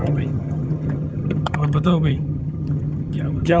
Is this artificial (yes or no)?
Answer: yes